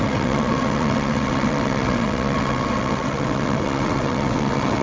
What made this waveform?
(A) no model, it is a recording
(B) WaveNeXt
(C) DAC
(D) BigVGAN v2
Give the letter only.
B